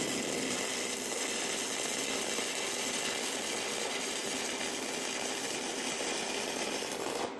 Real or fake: real